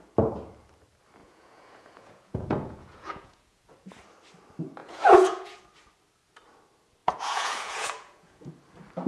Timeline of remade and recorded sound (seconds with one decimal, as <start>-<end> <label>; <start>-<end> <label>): 0.0-1.2 recorded; 1.2-3.7 remade; 3.7-4.8 recorded; 4.8-5.6 remade; 5.6-7.0 recorded; 7.0-8.5 remade; 8.5-9.1 recorded